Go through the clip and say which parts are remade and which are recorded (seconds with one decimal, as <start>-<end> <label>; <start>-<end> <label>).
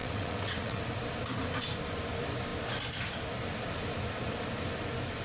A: 0.0-0.8 remade; 0.8-5.2 recorded